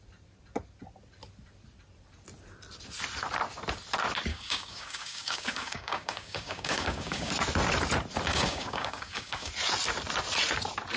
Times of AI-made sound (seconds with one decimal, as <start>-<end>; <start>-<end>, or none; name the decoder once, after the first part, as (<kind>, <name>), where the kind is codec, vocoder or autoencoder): 4.3-7.3 (codec, DAC); 8.3-9.5